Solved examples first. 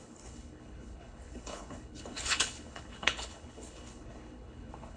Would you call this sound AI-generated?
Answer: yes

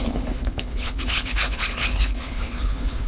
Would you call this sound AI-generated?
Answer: yes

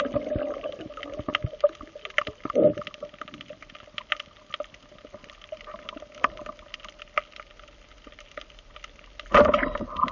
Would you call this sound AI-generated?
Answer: no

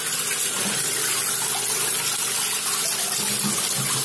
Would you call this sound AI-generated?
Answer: no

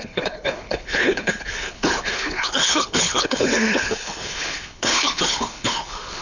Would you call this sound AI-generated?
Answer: yes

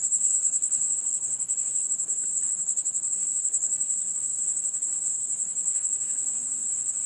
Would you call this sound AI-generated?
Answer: yes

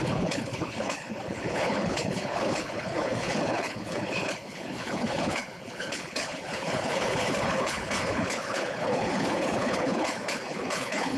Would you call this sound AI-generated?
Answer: yes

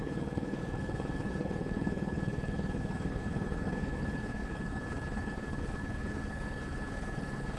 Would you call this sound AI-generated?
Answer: yes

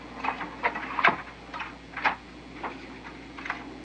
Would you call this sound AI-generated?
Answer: no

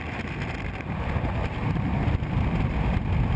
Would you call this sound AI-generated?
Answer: no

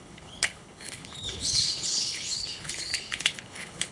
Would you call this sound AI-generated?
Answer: yes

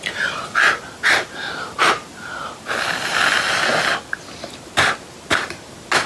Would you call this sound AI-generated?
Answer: no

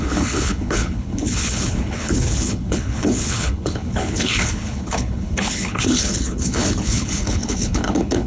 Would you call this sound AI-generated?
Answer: yes